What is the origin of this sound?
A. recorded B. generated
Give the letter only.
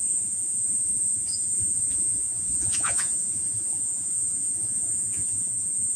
B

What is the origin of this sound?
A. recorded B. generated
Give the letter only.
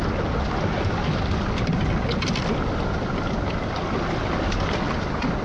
A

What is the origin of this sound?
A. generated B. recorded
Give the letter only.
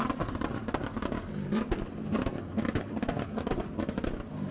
B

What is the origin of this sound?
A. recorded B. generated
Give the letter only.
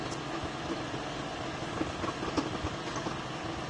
A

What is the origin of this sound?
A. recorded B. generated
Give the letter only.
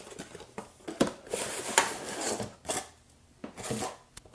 A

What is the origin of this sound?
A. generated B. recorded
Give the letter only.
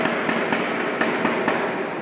B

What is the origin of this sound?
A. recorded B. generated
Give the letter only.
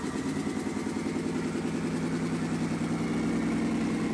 A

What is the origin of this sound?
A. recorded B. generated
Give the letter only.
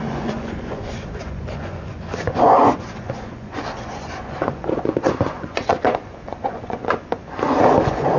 B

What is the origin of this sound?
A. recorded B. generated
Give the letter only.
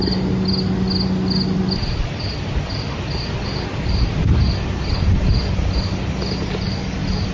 A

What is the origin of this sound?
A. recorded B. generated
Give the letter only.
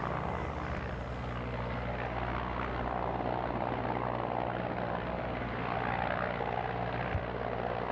A